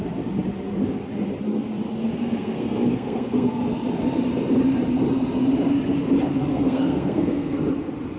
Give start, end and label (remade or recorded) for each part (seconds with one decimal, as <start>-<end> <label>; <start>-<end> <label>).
0.0-2.2 recorded; 2.2-3.6 remade; 3.6-6.5 recorded; 6.5-7.6 remade; 7.6-8.2 recorded